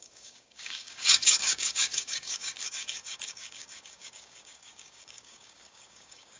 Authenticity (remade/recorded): remade